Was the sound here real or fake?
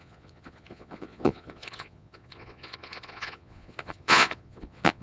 fake